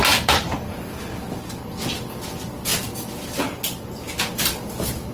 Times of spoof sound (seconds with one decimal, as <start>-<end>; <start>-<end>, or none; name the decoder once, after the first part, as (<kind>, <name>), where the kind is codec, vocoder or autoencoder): none